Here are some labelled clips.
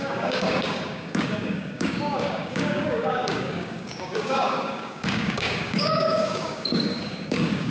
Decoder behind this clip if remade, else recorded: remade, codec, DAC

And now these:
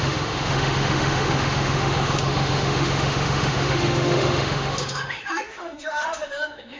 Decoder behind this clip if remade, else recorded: remade, autoencoder, DAC-VAE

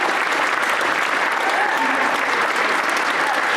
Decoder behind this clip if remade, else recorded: recorded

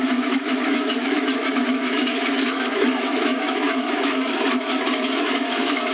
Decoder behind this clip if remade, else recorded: remade, autoencoder, DAC-VAE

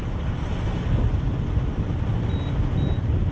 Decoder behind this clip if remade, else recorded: recorded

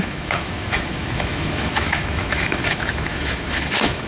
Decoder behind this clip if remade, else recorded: remade, autoencoder, DAC-VAE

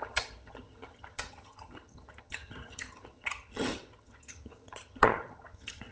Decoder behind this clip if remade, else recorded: remade, vocoder, HiFi-GAN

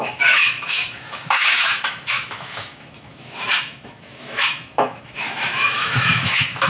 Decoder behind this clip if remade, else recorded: remade, autoencoder, DAC-VAE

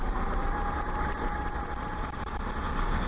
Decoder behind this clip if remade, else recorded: recorded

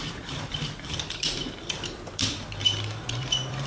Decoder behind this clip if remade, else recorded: remade, vocoder, BigVGAN v2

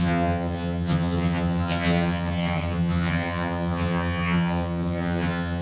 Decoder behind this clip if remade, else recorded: remade, vocoder, HiFi-GAN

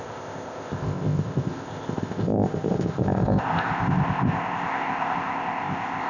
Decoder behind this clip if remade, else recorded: remade, codec, ZipCodec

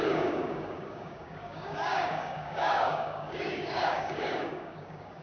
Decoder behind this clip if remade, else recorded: remade, codec, DAC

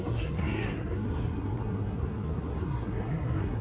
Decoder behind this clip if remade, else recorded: remade, codec, SNAC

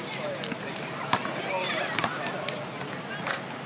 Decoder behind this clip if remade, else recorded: recorded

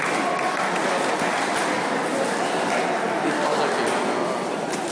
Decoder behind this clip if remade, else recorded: recorded